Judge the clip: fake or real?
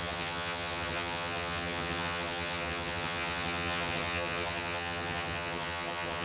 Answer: fake